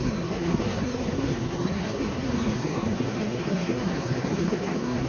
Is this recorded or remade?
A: remade